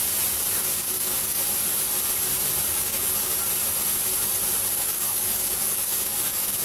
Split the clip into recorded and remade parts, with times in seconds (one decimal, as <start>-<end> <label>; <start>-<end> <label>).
0.0-0.6 recorded; 0.6-1.4 remade; 1.4-2.7 recorded; 2.7-3.3 remade; 3.3-4.7 recorded; 4.7-6.6 remade